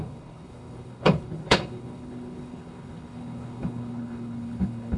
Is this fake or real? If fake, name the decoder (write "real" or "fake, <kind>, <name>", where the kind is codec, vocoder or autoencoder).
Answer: fake, codec, HILCodec